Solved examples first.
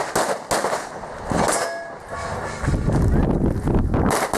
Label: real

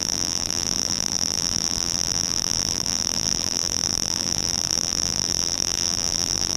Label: fake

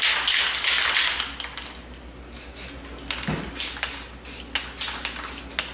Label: real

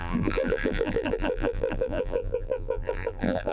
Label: fake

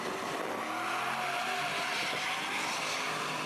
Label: real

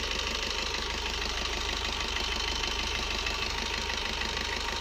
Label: fake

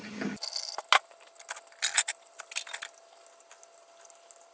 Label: real